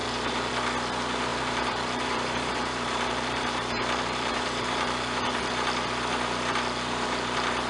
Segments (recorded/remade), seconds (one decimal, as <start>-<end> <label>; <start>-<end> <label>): 0.0-0.5 remade; 0.5-1.3 recorded; 1.3-5.5 remade; 5.5-7.7 recorded